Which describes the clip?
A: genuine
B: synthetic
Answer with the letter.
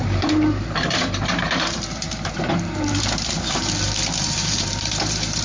B